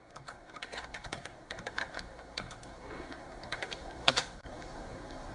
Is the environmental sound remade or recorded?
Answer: remade